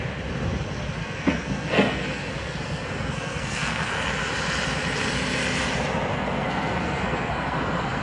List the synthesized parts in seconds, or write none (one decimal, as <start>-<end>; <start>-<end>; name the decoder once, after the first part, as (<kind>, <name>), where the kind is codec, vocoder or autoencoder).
1.0-3.9 (codec, SNAC); 6.1-8.0